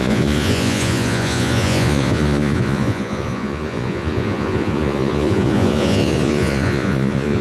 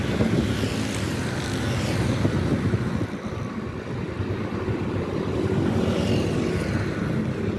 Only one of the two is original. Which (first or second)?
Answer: second